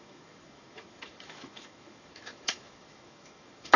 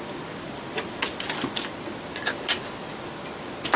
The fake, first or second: first